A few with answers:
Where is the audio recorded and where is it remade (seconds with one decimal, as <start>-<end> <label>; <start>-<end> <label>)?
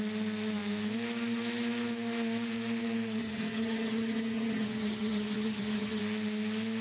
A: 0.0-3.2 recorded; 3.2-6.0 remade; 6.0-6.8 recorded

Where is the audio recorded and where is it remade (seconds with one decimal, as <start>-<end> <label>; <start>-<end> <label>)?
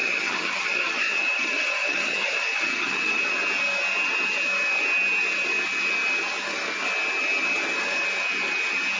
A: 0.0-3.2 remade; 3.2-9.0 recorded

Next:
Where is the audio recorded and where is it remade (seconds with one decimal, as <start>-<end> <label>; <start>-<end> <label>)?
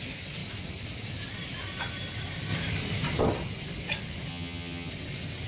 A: 0.0-4.3 recorded; 4.3-4.9 remade; 4.9-5.5 recorded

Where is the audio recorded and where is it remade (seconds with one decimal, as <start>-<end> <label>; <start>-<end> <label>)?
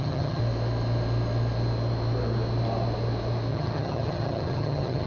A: 0.0-0.4 remade; 0.4-3.5 recorded; 3.5-5.1 remade